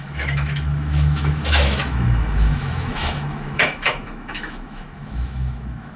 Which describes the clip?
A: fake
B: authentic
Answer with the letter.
A